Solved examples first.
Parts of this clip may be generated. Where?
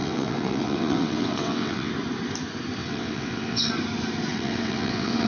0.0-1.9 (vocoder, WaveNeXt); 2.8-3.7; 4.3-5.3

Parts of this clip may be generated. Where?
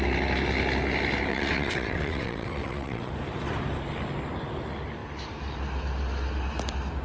1.3-3.1 (vocoder, WaveNeXt)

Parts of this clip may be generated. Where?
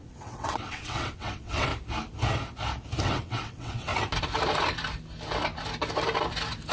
0.0-1.7 (vocoder, WaveNeXt); 3.0-3.9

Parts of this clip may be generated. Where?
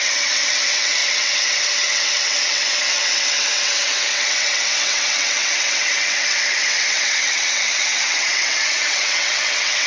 0.0-9.9 (vocoder, WaveNeXt)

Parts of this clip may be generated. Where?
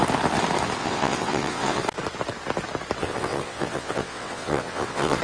0.8-1.8 (vocoder, WaveNeXt); 3.0-5.2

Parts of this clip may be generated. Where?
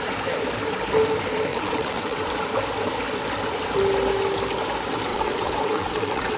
1.5-2.3 (vocoder, WaveNeXt); 5.1-6.4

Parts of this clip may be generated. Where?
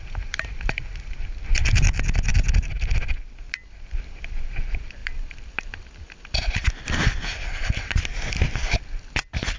none